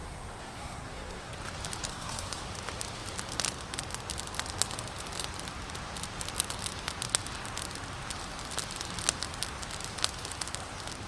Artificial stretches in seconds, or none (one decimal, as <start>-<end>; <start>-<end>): 0.0-1.3; 1.9-2.4